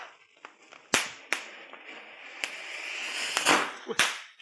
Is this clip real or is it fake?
real